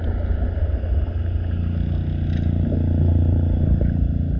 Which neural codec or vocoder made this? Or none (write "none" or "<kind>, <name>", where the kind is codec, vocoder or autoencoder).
none